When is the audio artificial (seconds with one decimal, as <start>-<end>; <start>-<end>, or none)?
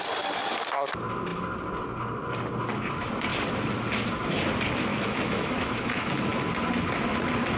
4.9-6.5